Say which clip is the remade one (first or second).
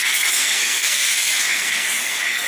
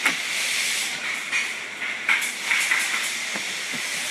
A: first